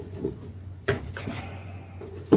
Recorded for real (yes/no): no